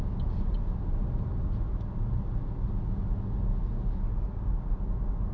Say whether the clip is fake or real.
real